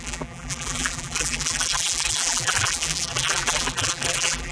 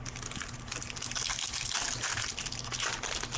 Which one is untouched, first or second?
second